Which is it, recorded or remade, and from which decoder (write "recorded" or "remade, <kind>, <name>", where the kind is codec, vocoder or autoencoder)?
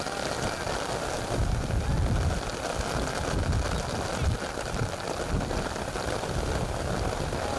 recorded